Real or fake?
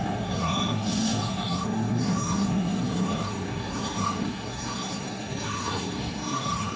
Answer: fake